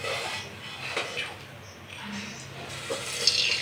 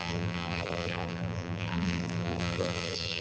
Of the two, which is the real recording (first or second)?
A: first